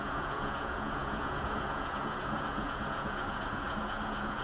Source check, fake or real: fake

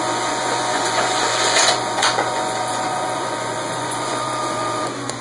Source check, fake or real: fake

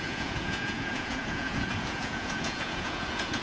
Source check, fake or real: fake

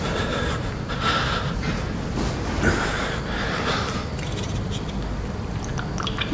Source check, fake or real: real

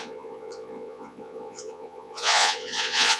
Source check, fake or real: fake